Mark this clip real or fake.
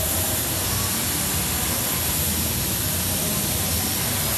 real